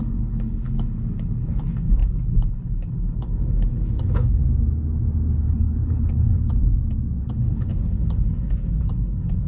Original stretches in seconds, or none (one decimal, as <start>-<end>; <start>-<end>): 4.4-5.3; 6.6-7.2